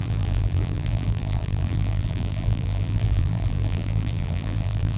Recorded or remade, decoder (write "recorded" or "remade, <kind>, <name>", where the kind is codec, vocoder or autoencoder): remade, vocoder, BigVGAN v2